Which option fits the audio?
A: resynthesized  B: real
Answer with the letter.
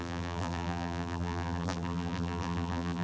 A